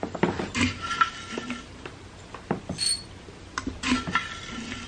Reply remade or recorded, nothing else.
recorded